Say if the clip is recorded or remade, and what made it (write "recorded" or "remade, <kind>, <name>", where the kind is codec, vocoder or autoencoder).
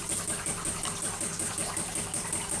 recorded